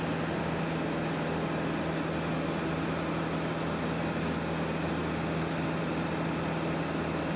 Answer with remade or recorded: recorded